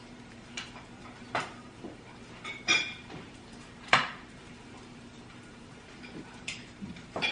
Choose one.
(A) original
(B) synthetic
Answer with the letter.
B